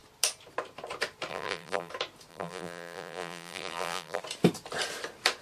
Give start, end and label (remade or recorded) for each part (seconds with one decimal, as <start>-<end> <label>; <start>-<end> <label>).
0.0-1.3 recorded; 1.3-1.9 remade; 1.9-2.3 recorded; 2.3-4.2 remade; 4.2-5.4 recorded